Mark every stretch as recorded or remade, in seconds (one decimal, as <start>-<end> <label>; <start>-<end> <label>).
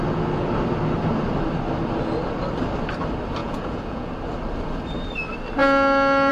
0.0-3.4 recorded; 3.4-4.1 remade; 4.1-6.3 recorded